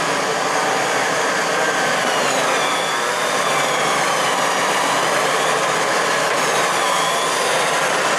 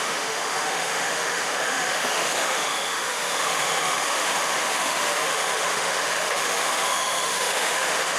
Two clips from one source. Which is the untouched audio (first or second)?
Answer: first